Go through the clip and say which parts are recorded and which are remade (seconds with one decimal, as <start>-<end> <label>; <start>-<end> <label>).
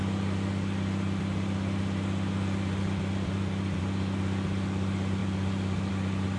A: 0.0-6.4 recorded